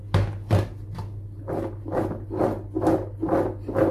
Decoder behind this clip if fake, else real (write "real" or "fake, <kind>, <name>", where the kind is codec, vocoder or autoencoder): real